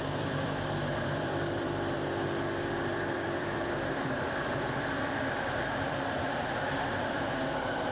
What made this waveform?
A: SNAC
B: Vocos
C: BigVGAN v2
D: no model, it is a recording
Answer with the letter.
C